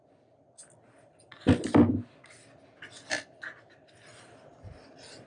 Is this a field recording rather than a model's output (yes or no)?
yes